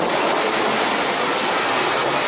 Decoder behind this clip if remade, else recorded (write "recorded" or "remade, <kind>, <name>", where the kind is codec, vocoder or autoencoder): recorded